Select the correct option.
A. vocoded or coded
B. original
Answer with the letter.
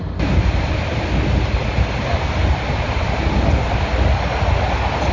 B